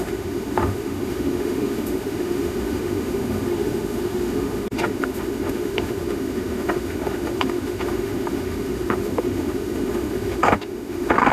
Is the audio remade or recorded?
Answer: remade